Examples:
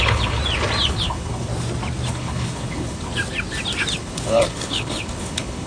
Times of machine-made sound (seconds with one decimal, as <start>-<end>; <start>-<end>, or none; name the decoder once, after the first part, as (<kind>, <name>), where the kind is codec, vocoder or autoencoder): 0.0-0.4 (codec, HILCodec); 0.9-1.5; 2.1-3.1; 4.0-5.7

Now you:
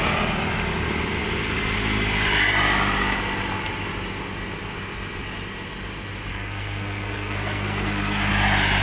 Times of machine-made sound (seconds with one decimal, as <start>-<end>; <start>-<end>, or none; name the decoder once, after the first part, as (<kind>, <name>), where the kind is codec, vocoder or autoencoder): 6.3-8.3 (codec, SNAC)

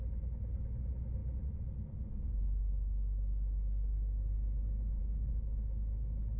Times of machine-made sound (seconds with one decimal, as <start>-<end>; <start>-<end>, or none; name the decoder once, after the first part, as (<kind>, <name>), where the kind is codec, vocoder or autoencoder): none